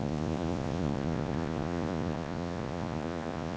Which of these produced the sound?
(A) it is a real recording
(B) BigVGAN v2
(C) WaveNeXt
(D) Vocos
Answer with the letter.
D